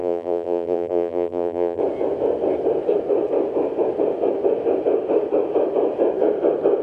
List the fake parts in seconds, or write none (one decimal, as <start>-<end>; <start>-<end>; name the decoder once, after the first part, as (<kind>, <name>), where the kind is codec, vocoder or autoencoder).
0.0-1.8 (vocoder, BigVGAN v2)